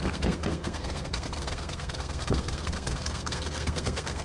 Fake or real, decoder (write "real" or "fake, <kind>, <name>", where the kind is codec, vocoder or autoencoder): fake, codec, SNAC